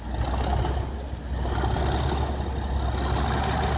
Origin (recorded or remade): recorded